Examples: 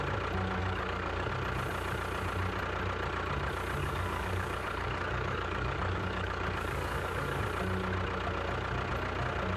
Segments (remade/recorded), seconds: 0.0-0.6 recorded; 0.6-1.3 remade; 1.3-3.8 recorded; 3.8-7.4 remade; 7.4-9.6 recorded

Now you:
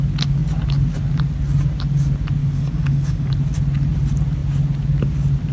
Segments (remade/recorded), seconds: 0.0-2.4 recorded; 2.4-3.3 remade; 3.3-5.5 recorded

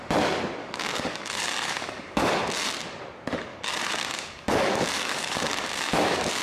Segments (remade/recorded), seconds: 0.0-0.6 recorded; 0.6-2.3 remade; 2.3-3.5 recorded; 3.5-6.4 remade

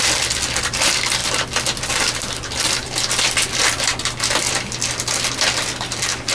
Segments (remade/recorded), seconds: 0.0-6.3 recorded

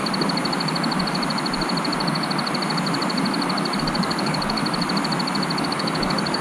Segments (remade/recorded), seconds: 0.0-3.8 recorded; 3.8-4.6 remade; 4.6-5.6 recorded; 5.6-6.4 remade

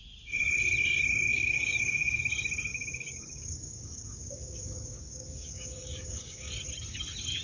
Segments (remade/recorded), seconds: 0.0-1.3 recorded; 1.3-2.2 remade; 2.2-2.7 recorded; 2.7-6.5 remade; 6.5-7.4 recorded

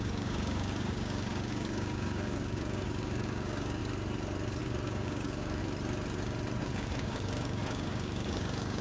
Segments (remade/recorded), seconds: 0.0-3.8 remade; 3.8-4.6 recorded; 4.6-5.6 remade; 5.6-6.6 recorded; 6.6-8.8 remade

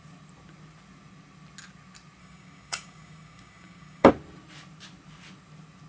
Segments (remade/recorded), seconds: 0.0-2.2 recorded; 2.2-4.1 remade; 4.1-5.9 recorded